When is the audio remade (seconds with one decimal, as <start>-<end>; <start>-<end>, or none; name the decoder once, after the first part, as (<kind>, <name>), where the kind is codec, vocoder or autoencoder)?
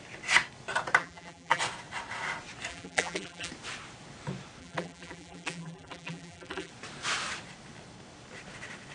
1.0-1.6 (vocoder, BigVGAN v2); 2.7-3.5; 4.6-6.7